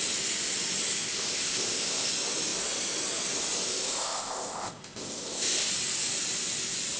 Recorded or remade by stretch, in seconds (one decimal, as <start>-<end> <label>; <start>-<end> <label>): 0.0-0.9 recorded; 0.9-2.1 remade; 2.1-3.7 recorded; 3.7-5.7 remade; 5.7-7.0 recorded